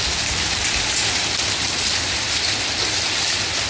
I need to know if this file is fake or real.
real